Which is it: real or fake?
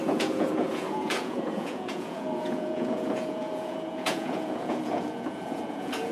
fake